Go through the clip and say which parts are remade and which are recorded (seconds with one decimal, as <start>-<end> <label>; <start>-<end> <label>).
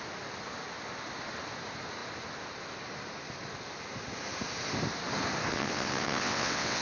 0.0-5.5 recorded; 5.5-6.8 remade